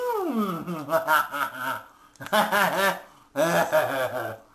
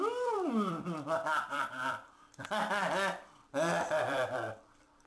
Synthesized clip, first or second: second